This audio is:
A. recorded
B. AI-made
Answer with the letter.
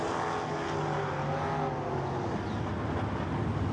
A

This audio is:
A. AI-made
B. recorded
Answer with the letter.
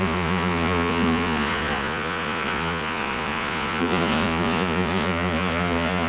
A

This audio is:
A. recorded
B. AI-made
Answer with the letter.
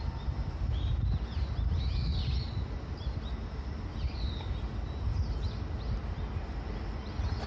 A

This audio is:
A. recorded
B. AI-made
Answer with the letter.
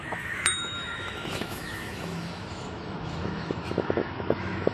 B